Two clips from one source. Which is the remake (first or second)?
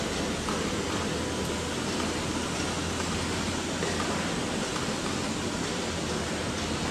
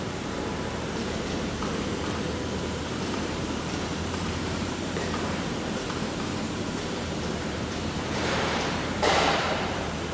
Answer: second